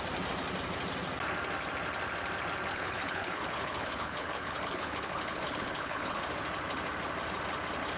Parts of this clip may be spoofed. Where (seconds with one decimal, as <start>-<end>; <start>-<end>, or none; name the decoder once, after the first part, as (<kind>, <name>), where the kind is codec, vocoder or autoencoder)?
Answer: 2.7-6.2 (codec, HILCodec)